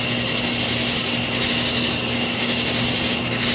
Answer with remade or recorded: recorded